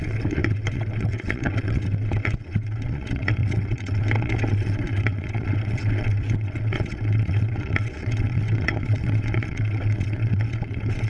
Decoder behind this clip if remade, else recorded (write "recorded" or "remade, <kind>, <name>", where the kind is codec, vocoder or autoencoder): remade, vocoder, WaveNeXt